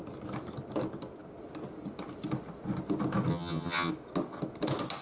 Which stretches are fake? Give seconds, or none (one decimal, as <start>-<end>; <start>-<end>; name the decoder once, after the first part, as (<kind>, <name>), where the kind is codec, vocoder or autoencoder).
3.3-3.9 (vocoder, HiFi-GAN)